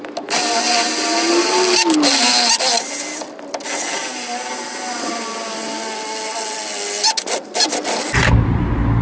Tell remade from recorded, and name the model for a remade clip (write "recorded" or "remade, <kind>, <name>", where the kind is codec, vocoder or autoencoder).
recorded